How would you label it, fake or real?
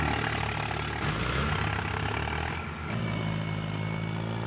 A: real